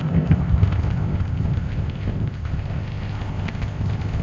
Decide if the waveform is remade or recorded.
remade